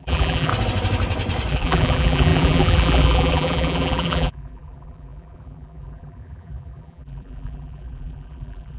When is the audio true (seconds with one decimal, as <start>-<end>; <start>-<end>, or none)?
0.5-1.5